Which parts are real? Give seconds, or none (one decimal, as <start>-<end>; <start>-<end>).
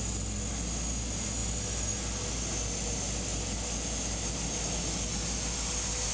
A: 0.0-6.1